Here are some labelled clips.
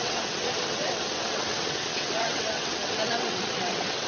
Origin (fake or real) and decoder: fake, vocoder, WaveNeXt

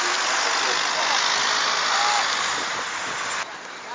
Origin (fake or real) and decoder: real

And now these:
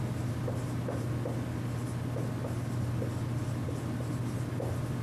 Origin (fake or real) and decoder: real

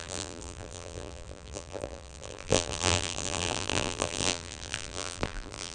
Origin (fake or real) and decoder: fake, vocoder, BigVGAN v2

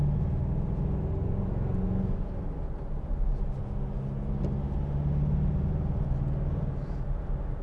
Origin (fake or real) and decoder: real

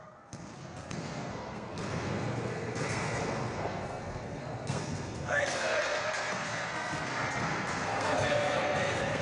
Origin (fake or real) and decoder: fake, codec, SNAC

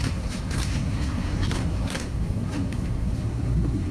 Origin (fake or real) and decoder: fake, codec, SNAC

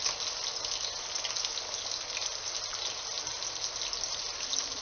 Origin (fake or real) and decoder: real